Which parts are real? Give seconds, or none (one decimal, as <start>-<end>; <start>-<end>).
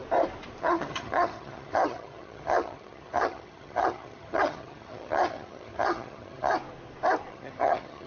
0.0-0.6; 6.5-7.3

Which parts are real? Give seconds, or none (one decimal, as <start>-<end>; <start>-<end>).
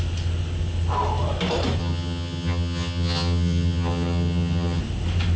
0.0-1.8; 4.8-5.4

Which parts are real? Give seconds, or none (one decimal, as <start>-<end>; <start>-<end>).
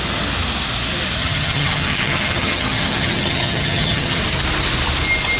0.0-1.2; 4.2-5.4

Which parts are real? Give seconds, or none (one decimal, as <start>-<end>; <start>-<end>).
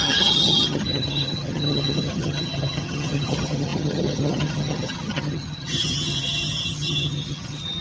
none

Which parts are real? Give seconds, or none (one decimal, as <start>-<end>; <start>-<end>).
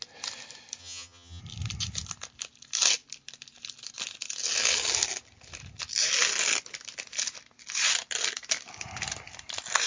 0.0-0.8; 1.4-9.9